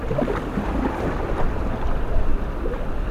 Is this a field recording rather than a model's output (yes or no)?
yes